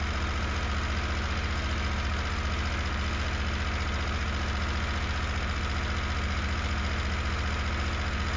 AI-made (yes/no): no